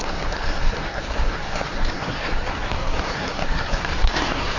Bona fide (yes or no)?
no